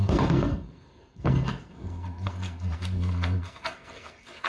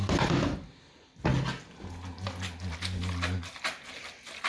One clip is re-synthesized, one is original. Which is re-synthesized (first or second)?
first